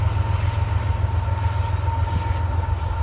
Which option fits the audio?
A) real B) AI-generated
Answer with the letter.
A